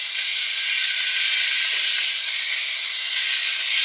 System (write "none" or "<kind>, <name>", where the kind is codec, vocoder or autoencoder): none